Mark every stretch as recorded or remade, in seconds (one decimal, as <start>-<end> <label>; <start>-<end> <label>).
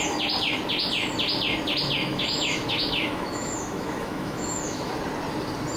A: 0.0-2.1 recorded; 2.1-4.9 remade; 4.9-5.8 recorded